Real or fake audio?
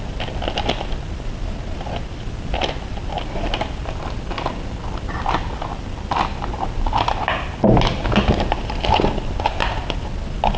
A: real